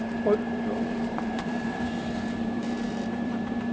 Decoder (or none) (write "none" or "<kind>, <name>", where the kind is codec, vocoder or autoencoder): vocoder, BigVGAN v2